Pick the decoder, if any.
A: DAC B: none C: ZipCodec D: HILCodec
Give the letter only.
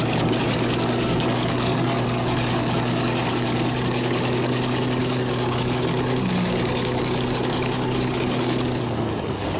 A